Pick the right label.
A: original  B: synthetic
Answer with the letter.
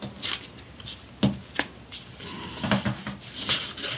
A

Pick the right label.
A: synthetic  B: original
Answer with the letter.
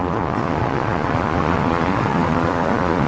A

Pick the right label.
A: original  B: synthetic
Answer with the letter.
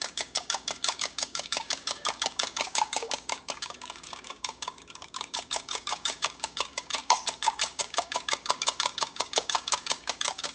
B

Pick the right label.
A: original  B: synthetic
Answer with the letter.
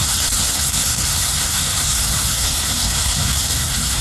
B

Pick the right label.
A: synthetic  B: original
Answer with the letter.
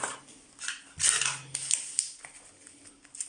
B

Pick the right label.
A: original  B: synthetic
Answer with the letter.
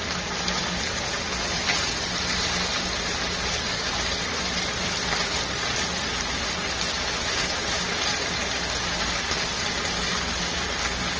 A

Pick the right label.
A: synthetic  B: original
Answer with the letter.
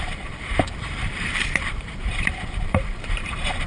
A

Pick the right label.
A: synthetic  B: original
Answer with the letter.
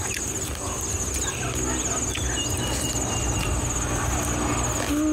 B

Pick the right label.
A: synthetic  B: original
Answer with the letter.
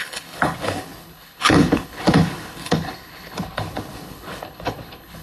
A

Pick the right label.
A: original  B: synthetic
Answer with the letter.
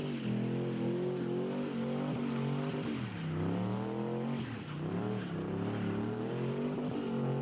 A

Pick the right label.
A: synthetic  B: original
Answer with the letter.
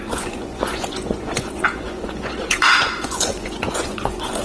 A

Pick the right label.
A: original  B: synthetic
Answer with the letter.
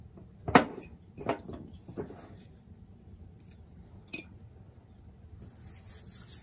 A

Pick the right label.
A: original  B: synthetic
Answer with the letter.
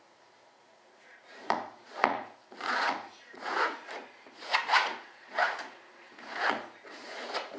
B